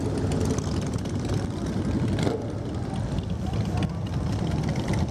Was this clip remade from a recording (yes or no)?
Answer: yes